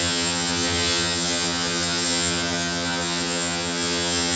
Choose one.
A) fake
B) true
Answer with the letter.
A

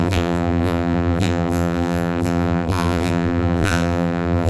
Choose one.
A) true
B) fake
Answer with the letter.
B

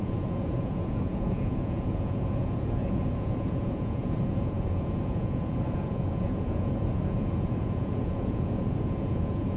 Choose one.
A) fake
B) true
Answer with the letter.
A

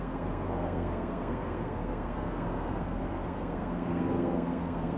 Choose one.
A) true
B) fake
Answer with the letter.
B